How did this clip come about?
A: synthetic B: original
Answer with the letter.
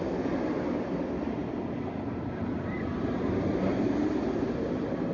B